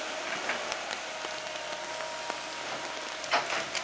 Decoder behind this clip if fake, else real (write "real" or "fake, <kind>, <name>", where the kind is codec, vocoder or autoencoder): real